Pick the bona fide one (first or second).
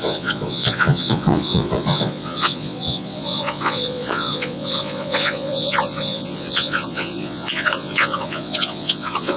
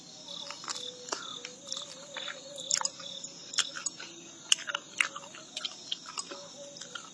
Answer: second